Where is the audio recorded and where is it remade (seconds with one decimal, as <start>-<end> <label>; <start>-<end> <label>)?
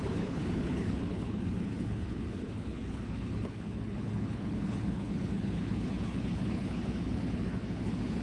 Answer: 0.0-8.2 remade